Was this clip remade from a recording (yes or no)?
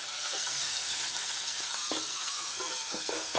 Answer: yes